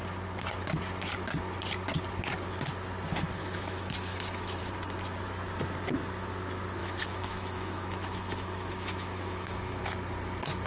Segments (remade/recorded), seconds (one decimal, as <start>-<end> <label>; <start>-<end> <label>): 0.0-3.4 recorded; 3.4-4.6 remade; 4.6-6.8 recorded; 6.8-9.8 remade; 9.8-10.7 recorded